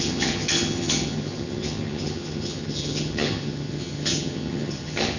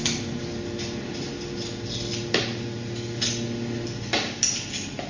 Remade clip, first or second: first